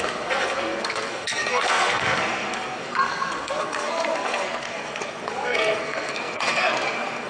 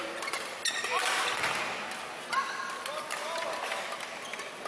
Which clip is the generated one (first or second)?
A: first